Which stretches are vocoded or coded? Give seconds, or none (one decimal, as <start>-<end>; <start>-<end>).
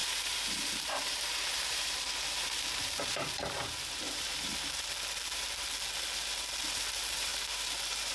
0.0-4.5; 6.6-8.1